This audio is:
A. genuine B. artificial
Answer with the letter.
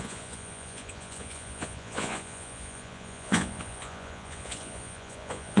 B